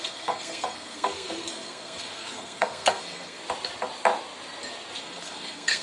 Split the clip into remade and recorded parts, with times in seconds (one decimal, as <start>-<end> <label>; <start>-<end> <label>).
0.0-3.4 remade; 3.4-5.0 recorded; 5.0-5.8 remade